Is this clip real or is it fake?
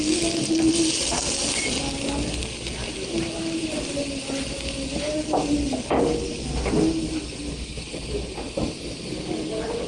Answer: real